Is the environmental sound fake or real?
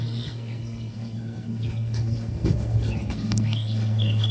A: fake